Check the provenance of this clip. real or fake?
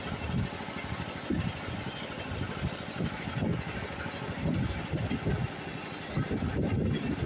real